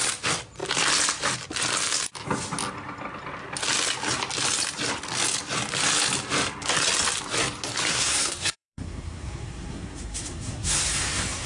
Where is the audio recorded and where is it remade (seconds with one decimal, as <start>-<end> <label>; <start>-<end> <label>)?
0.0-7.9 recorded; 7.9-11.5 remade